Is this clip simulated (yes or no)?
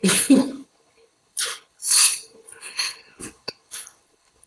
yes